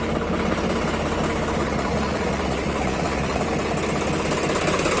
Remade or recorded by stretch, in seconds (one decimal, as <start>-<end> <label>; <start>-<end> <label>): 0.0-1.6 recorded; 1.6-3.4 remade; 3.4-5.0 recorded